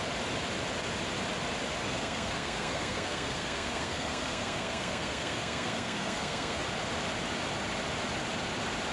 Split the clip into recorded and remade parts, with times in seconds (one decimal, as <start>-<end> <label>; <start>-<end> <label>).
0.0-1.8 recorded; 1.8-6.6 remade; 6.6-8.9 recorded